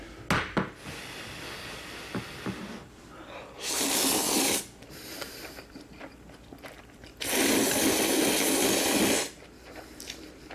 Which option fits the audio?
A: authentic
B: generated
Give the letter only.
A